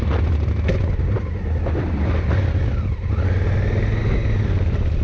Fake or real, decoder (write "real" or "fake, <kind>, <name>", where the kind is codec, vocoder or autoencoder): real